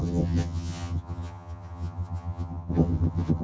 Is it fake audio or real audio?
fake